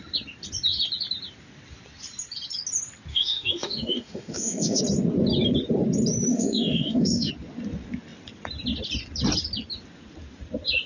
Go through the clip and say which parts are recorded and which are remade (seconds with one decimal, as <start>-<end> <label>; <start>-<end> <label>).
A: 0.0-3.1 recorded; 3.1-4.8 remade; 4.8-6.3 recorded; 6.3-7.3 remade; 7.3-10.9 recorded